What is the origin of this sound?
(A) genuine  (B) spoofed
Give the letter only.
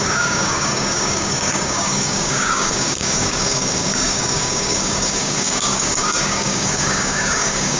B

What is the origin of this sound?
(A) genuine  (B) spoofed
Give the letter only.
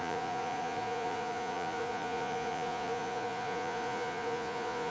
B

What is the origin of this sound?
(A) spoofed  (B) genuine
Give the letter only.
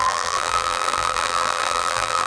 A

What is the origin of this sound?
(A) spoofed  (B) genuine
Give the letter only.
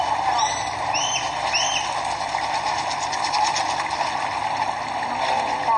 B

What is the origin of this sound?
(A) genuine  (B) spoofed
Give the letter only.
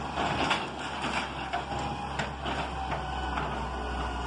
A